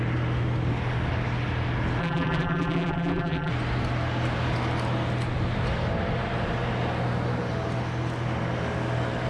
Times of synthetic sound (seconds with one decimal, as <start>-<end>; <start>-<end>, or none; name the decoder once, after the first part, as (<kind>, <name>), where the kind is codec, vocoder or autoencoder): 2.0-3.5 (vocoder, BigVGAN v2)